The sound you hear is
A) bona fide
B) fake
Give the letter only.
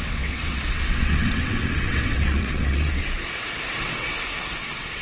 B